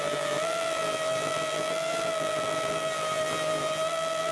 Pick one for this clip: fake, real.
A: fake